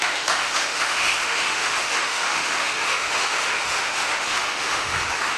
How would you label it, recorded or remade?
remade